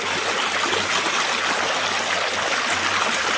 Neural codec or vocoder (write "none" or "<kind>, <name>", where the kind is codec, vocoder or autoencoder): none